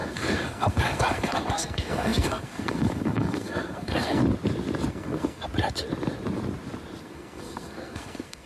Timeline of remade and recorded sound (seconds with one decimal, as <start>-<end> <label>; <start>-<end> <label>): 0.0-4.2 remade; 4.2-4.9 recorded; 4.9-5.4 remade; 5.4-7.0 recorded; 7.0-8.5 remade